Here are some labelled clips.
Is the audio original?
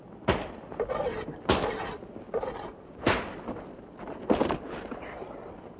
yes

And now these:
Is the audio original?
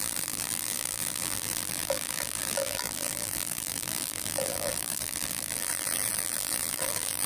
no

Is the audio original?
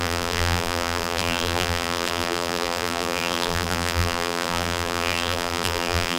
no